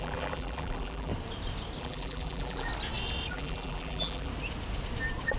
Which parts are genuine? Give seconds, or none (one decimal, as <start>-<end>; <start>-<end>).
1.1-1.8; 2.7-3.3; 4.3-5.4